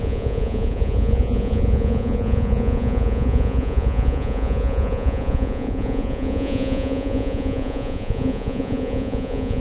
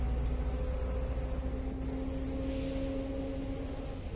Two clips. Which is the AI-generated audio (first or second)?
first